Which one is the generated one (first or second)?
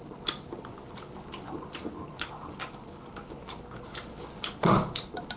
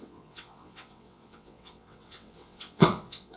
second